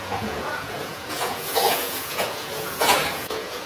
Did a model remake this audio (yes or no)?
yes